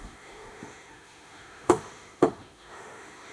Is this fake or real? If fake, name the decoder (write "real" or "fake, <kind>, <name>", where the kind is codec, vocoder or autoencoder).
fake, autoencoder, DAC-VAE